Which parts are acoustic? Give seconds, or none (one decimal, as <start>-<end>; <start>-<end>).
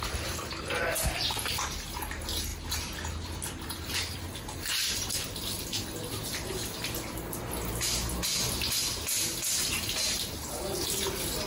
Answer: 0.0-11.5